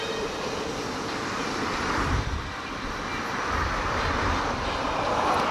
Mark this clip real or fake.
fake